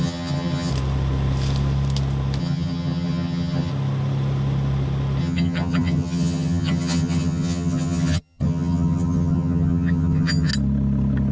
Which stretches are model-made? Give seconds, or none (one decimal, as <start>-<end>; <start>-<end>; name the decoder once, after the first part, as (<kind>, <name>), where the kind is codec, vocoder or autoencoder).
0.0-0.7 (vocoder, HiFi-GAN); 2.4-3.7; 5.2-10.5